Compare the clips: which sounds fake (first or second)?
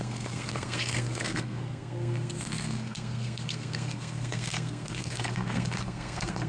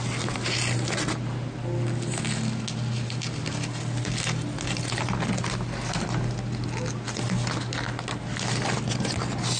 first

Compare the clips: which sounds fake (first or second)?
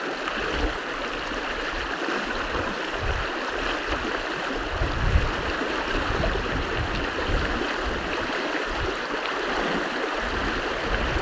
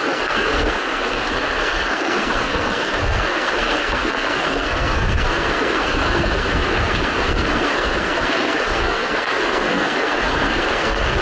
second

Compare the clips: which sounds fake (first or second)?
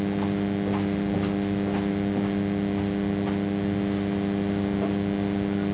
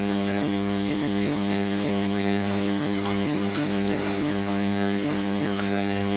second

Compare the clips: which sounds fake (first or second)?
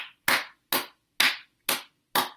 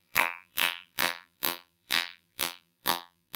second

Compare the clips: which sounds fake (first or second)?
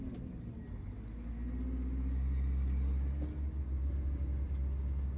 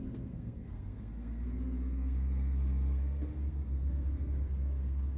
second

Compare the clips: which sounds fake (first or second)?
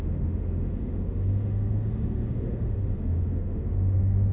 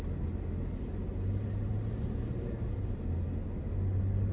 first